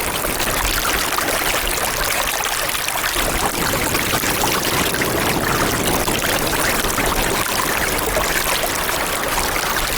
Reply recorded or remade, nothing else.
recorded